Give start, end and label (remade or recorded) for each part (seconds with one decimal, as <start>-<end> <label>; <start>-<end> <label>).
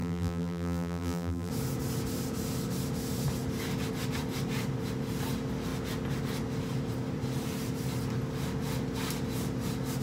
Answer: 0.0-1.5 remade; 1.5-10.0 recorded